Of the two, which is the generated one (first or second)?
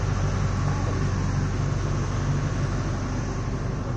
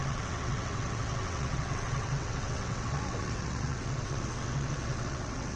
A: second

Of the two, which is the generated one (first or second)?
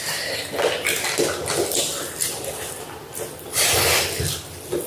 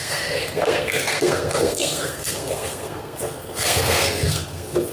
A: second